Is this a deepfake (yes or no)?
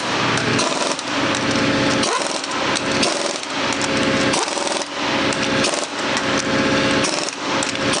no